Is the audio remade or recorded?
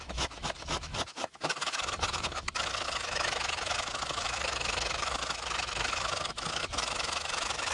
remade